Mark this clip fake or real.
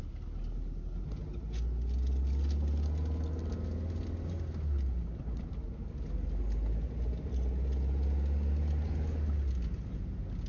real